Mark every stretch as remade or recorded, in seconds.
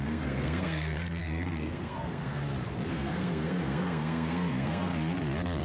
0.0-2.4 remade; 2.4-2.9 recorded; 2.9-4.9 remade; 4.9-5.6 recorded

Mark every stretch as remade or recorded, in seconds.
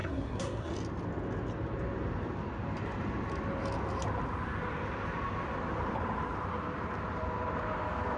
0.0-0.7 remade; 0.7-8.2 recorded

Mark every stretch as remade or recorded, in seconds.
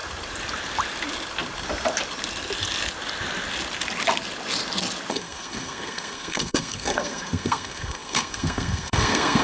0.0-5.1 recorded; 5.1-9.4 remade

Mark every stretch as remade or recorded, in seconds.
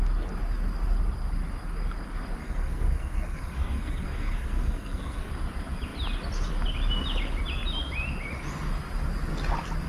0.0-2.4 recorded; 2.4-5.3 remade; 5.3-9.9 recorded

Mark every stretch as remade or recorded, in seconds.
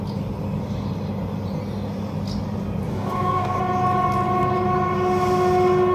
0.0-2.9 recorded; 2.9-3.6 remade; 3.6-5.9 recorded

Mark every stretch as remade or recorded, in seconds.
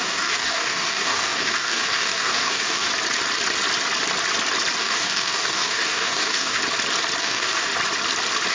0.0-2.9 remade; 2.9-4.8 recorded; 4.8-6.6 remade; 6.6-7.2 recorded; 7.2-7.7 remade; 7.7-8.5 recorded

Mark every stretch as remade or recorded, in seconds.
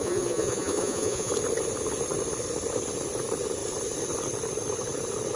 0.0-1.3 remade; 1.3-5.4 recorded